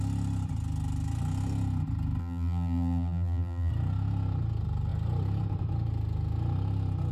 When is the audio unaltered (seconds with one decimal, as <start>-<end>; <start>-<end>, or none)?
0.0-2.2; 3.7-7.1